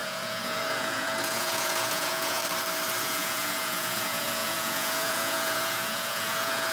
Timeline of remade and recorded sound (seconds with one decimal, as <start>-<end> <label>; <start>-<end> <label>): 0.0-2.4 remade; 2.4-3.0 recorded; 3.0-6.7 remade